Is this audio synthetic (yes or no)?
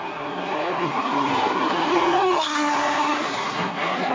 yes